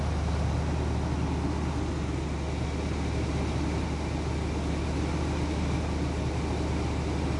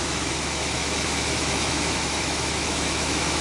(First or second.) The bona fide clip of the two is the first